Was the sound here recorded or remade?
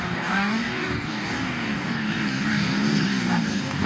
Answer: remade